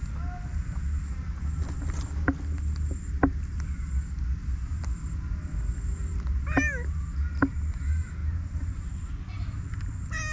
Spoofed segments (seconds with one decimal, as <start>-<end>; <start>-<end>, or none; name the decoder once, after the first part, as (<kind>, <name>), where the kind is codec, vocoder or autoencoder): none